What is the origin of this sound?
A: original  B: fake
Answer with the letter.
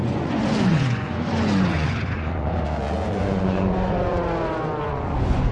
B